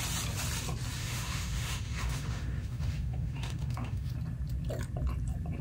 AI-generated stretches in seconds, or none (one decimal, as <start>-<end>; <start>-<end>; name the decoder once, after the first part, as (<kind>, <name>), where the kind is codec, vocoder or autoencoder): 1.0-4.1 (autoencoder, DAC-VAE)